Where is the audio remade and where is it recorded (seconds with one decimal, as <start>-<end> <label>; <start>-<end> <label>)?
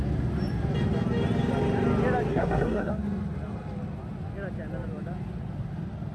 0.0-2.3 recorded; 2.3-2.9 remade; 2.9-6.1 recorded